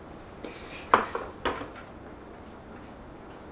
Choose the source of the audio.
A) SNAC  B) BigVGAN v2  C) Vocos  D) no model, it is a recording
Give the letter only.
D